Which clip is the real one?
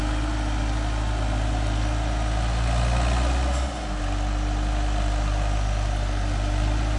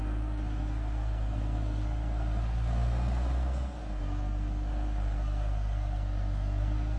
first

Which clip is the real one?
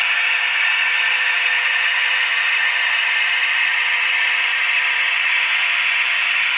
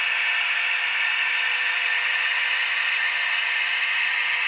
second